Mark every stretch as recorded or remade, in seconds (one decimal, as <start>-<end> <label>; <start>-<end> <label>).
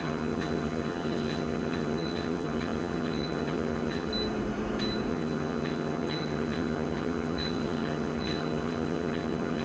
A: 0.0-4.1 remade; 4.1-5.1 recorded; 5.1-9.6 remade